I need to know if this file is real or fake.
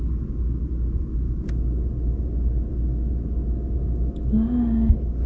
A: real